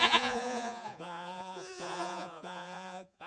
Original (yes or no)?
no